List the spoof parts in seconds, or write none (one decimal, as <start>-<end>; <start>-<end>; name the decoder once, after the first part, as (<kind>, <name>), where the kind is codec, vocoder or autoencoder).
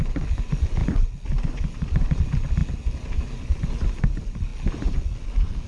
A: none